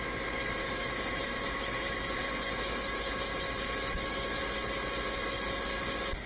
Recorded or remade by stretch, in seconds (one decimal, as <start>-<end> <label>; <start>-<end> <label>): 0.0-0.6 recorded; 0.6-4.4 remade; 4.4-6.3 recorded